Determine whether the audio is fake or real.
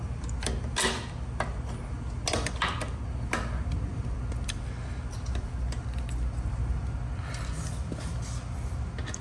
real